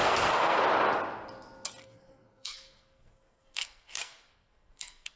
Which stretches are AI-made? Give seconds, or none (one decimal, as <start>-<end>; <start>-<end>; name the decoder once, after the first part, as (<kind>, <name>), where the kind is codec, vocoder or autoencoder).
0.0-0.6 (codec, SNAC); 1.8-5.2